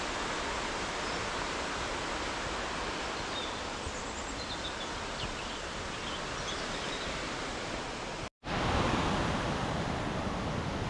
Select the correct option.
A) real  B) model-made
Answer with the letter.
A